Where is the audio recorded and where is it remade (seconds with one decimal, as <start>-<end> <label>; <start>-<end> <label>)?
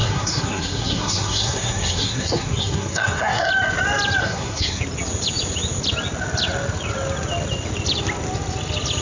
0.0-3.5 remade; 3.5-4.2 recorded; 4.2-4.8 remade; 4.8-9.0 recorded